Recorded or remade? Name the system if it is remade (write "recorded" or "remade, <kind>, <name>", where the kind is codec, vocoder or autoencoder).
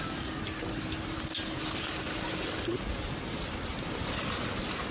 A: recorded